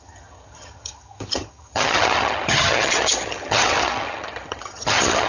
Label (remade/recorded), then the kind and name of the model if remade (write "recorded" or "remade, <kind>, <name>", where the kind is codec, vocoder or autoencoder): remade, vocoder, HiFi-GAN